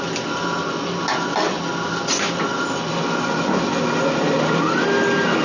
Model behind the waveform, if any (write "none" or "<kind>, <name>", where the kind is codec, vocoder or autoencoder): none